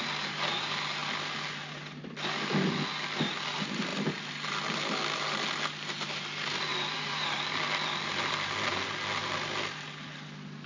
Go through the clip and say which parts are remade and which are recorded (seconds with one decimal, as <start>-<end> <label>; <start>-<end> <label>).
0.0-3.9 recorded; 3.9-4.5 remade; 4.5-6.7 recorded; 6.7-8.5 remade; 8.5-10.7 recorded